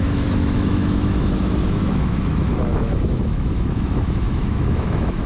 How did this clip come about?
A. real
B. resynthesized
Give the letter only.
B